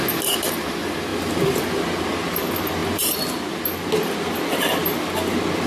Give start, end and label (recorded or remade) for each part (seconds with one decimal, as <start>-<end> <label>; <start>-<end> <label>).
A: 0.0-2.8 recorded; 2.8-3.6 remade; 3.6-5.7 recorded